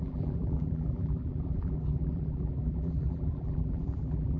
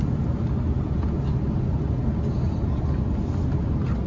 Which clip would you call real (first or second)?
second